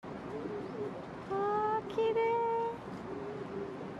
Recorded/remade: recorded